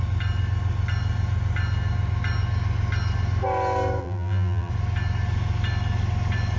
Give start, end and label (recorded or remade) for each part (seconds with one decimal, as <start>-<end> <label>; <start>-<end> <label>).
0.0-4.0 recorded; 4.0-4.7 remade; 4.7-6.6 recorded